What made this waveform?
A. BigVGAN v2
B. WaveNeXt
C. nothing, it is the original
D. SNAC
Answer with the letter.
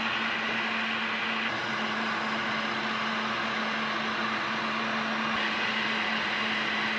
C